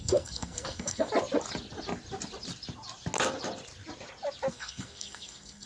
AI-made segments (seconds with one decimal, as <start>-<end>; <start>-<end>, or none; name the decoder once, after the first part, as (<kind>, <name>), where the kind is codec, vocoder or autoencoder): 0.0-1.1 (codec, SNAC); 4.5-5.7